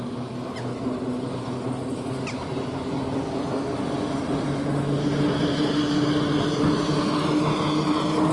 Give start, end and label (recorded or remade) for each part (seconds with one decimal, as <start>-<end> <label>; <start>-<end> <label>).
0.0-8.3 recorded